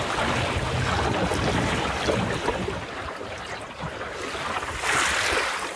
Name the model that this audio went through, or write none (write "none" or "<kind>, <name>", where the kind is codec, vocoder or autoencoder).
none